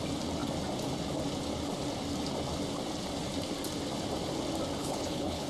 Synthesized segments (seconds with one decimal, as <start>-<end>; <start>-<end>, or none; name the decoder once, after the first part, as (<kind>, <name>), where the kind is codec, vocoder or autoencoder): 4.8-5.5 (codec, HILCodec)